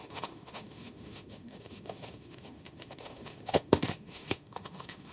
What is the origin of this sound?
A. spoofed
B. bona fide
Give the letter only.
A